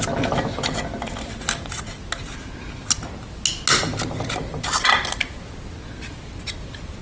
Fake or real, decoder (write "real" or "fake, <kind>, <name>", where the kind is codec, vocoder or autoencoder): real